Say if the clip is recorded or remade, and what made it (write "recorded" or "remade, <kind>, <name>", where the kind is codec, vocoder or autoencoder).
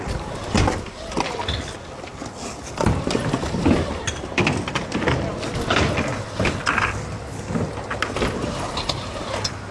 recorded